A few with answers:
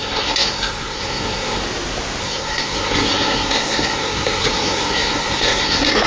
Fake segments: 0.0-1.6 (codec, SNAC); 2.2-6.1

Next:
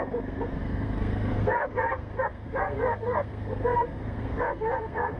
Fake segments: 0.0-5.2 (codec, SNAC)